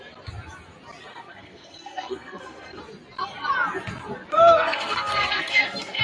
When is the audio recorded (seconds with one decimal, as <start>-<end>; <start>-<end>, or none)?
0.0-1.1; 2.8-4.3